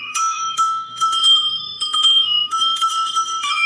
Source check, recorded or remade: remade